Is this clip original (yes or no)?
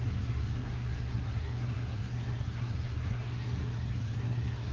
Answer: no